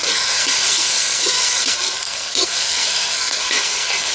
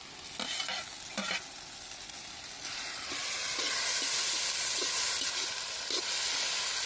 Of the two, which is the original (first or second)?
second